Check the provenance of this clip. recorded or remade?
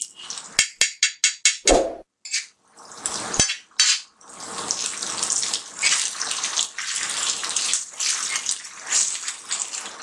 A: recorded